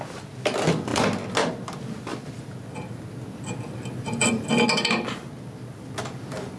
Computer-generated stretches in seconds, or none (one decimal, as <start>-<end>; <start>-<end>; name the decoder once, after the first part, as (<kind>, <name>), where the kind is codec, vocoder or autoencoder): none